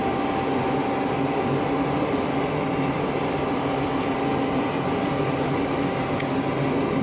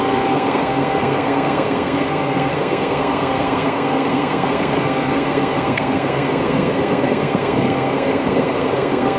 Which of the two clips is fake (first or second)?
second